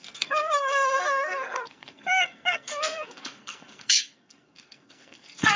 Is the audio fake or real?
fake